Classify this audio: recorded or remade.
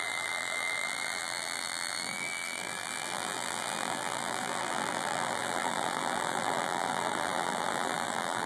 remade